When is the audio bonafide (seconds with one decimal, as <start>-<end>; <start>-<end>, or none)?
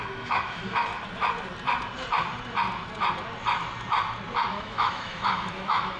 0.9-4.5